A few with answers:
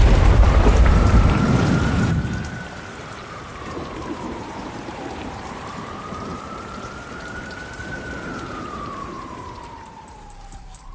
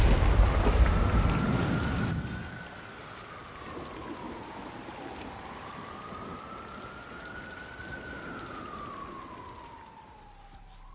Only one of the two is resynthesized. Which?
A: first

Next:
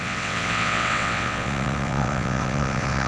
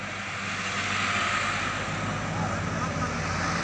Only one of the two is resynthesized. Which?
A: first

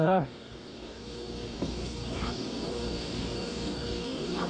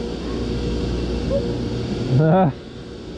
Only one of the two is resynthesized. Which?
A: first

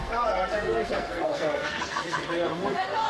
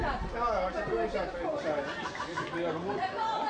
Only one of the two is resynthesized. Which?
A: first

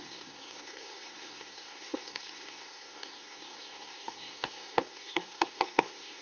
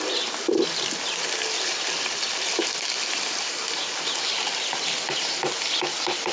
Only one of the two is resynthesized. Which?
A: first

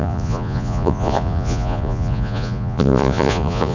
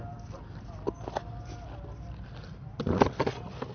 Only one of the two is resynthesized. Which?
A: first